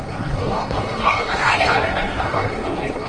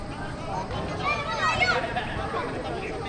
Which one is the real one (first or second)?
second